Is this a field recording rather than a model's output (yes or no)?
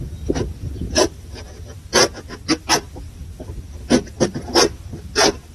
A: yes